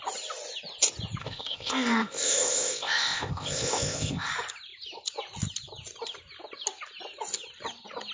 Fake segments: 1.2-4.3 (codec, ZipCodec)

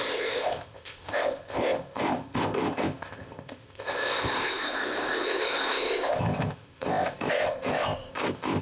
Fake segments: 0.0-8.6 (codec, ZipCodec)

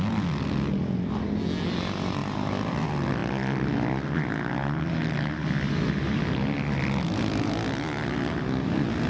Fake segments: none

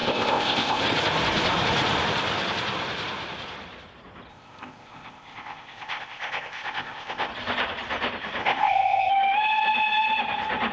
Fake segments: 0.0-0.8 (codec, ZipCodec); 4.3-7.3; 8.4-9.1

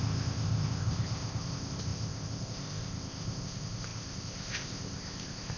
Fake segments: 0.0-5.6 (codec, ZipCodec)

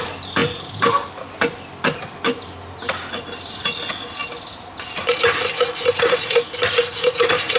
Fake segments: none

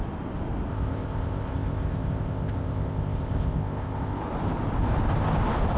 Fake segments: 0.7-4.2 (codec, ZipCodec)

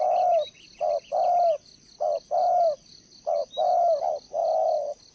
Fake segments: none